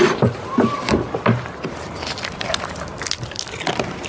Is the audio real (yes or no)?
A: yes